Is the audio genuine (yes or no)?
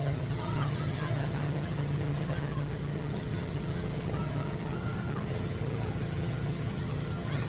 no